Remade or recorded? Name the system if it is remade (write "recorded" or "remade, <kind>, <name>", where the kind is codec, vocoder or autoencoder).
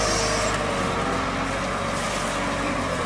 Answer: recorded